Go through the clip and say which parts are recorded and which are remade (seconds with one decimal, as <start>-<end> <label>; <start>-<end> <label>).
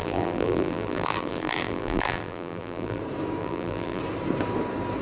0.0-3.0 remade; 3.0-3.4 recorded; 3.4-4.0 remade; 4.0-5.0 recorded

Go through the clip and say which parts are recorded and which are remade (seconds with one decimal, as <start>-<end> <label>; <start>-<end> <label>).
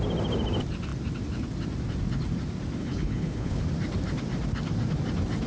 0.0-2.8 recorded; 2.8-3.6 remade; 3.6-5.5 recorded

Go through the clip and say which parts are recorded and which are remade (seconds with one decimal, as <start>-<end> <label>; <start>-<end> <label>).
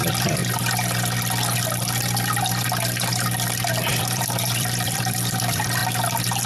0.0-0.4 remade; 0.4-3.9 recorded; 3.9-5.8 remade; 5.8-6.5 recorded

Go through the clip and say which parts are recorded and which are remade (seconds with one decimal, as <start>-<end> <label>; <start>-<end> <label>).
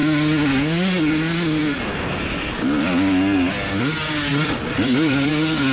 0.0-4.3 recorded; 4.3-5.3 remade; 5.3-5.7 recorded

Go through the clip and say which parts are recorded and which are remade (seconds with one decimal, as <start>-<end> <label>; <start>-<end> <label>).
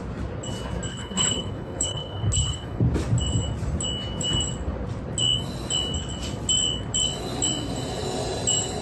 0.0-0.9 recorded; 0.9-2.8 remade; 2.8-8.8 recorded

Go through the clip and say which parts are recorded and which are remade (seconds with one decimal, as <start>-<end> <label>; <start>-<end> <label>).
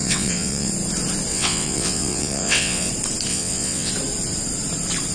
0.0-0.7 remade; 0.7-1.3 recorded; 1.3-2.9 remade; 2.9-3.3 recorded; 3.3-3.9 remade; 3.9-5.1 recorded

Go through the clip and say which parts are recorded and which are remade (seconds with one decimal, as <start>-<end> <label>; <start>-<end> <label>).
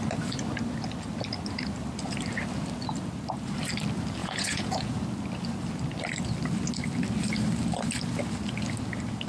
0.0-4.2 recorded; 4.2-5.0 remade; 5.0-9.3 recorded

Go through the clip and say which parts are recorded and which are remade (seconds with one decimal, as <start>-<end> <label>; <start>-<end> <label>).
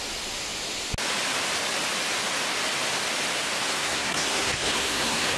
0.0-3.7 recorded; 3.7-5.4 remade